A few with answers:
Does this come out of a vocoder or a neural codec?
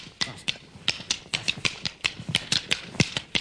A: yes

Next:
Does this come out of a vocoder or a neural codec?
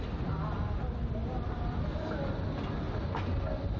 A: no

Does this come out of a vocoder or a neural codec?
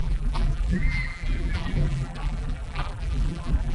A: yes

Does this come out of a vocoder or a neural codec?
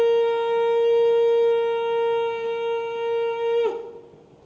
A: no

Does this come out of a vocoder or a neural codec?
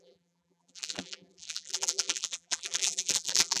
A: yes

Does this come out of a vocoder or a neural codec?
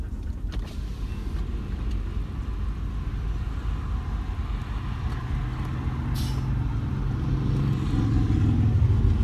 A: no